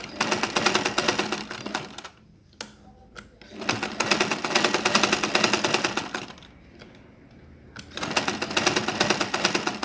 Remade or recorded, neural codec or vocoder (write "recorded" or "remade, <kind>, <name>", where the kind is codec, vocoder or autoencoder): recorded